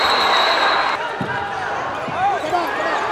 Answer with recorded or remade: recorded